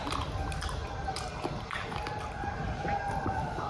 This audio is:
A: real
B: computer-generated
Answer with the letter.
A